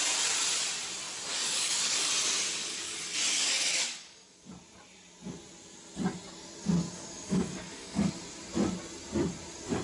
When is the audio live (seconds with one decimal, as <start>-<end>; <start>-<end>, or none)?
0.0-1.3; 2.1-2.6; 4.5-6.8; 8.1-9.8